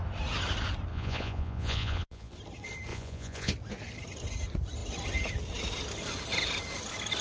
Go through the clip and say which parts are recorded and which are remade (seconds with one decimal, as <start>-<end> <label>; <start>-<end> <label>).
0.0-0.9 recorded; 0.9-2.3 remade; 2.3-2.9 recorded; 2.9-3.5 remade; 3.5-7.2 recorded